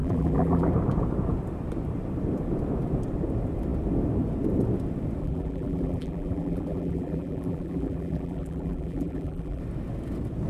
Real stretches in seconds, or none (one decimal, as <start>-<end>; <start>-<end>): 0.7-5.2; 9.6-10.5